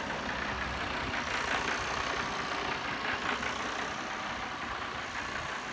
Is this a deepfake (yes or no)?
no